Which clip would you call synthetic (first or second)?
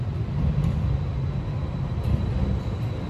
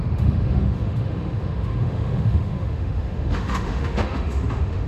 second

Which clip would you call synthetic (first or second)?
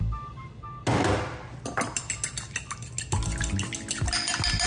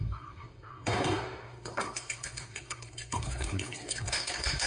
second